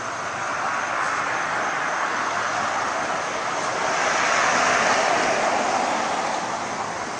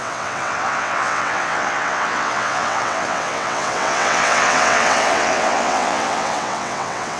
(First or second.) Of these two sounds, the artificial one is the second